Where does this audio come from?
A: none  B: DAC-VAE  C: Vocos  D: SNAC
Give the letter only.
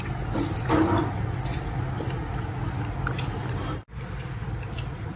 A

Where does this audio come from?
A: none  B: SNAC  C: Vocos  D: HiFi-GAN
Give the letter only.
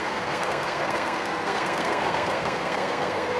B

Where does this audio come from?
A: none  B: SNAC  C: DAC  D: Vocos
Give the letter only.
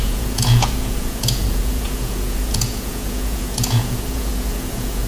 D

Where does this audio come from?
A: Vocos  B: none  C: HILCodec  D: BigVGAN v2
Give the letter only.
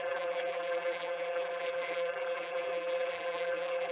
D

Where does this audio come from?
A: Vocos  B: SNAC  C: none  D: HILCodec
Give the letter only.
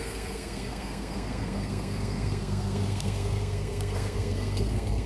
B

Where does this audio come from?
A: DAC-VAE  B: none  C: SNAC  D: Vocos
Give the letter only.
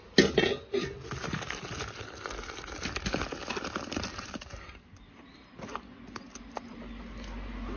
B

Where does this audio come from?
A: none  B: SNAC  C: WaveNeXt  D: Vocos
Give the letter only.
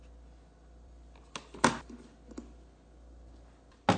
A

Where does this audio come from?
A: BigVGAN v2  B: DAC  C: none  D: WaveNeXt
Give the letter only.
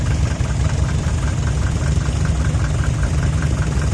A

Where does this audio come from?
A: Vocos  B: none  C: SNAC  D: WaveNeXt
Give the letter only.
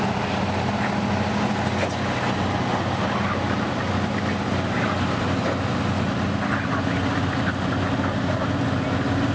B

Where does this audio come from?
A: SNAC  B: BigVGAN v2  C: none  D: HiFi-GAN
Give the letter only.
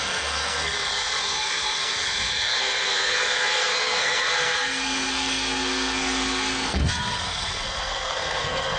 A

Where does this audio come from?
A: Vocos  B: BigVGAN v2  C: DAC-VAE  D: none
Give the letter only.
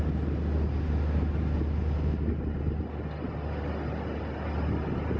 D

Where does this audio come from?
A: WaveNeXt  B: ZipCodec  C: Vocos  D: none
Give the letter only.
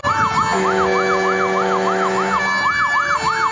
D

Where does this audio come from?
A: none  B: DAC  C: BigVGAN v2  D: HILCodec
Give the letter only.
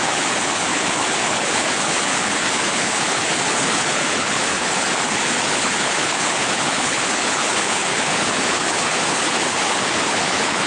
D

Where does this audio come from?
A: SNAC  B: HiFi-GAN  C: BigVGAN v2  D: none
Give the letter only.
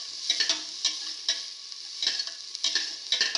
D